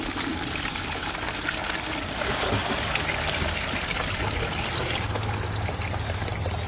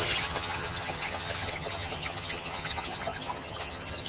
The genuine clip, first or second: first